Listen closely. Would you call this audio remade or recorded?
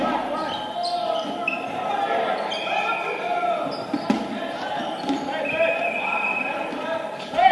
recorded